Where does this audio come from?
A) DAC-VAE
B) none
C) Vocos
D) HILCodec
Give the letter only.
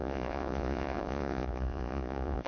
C